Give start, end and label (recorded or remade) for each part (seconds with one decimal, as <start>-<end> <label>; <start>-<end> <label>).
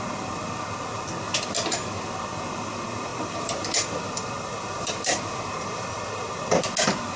0.0-3.1 recorded; 3.1-6.6 remade; 6.6-7.2 recorded